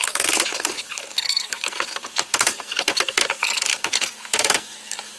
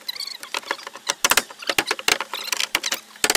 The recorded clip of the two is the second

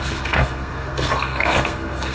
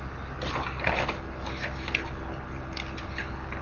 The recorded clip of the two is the second